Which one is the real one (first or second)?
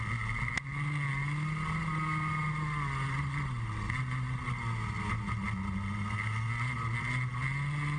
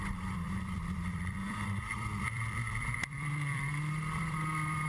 first